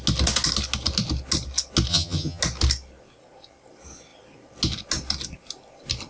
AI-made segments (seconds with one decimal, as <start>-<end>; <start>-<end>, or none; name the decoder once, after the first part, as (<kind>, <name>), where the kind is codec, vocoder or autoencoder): 1.9-2.4 (vocoder, HiFi-GAN)